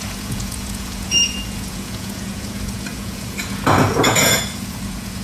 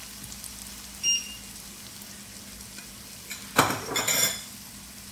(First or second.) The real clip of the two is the second